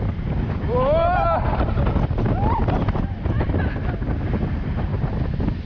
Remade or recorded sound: recorded